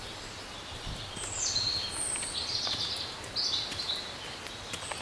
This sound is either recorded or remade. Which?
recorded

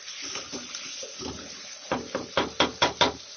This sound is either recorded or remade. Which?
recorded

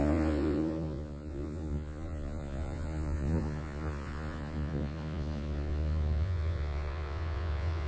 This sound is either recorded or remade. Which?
remade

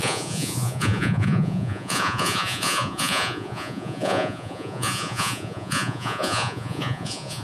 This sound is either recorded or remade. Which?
remade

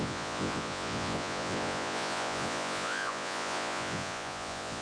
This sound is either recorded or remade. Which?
remade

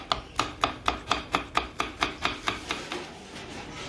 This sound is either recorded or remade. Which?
recorded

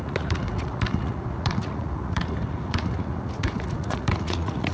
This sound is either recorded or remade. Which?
remade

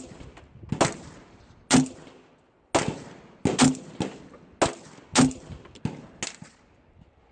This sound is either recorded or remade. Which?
recorded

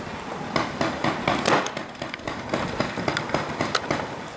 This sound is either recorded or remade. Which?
recorded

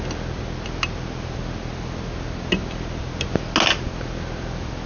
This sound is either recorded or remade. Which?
recorded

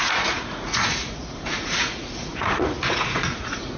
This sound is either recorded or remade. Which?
remade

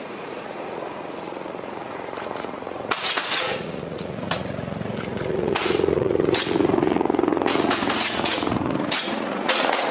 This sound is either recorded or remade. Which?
remade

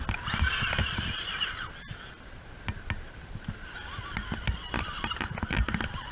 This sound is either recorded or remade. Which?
recorded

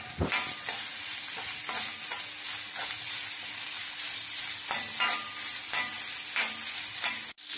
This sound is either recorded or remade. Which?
recorded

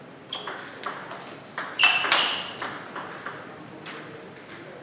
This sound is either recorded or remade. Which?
recorded